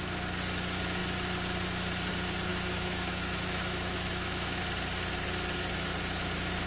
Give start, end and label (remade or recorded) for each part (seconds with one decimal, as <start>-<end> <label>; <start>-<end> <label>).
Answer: 0.0-2.5 recorded; 2.5-4.6 remade; 4.6-6.7 recorded